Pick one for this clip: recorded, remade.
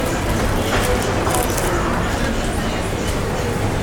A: recorded